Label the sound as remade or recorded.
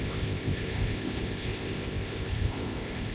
remade